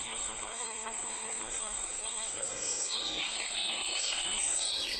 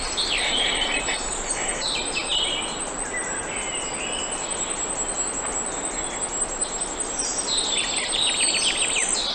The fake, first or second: first